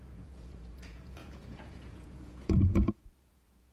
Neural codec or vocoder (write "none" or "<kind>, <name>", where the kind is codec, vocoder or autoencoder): vocoder, Vocos